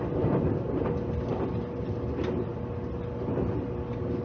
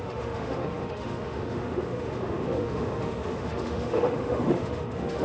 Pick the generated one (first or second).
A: second